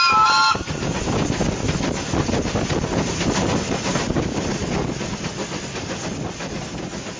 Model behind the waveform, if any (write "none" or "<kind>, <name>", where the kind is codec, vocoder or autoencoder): none